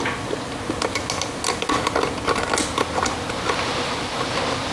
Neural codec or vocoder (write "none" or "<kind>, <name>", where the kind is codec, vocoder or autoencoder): none